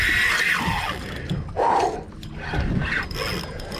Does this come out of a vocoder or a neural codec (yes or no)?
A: no